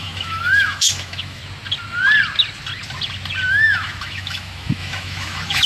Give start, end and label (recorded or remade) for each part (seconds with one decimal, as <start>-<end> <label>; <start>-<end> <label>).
0.0-1.4 remade; 1.4-3.5 recorded; 3.5-5.7 remade